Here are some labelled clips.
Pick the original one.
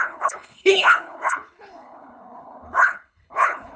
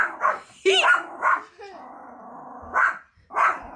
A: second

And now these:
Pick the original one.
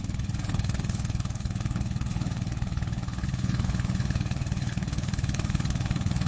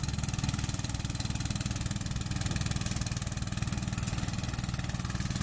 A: second